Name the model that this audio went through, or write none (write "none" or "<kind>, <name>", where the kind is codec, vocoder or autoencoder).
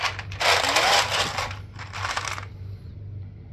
none